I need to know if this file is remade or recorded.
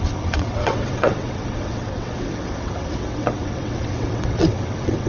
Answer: remade